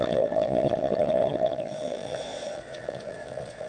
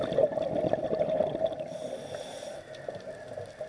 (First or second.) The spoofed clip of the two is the first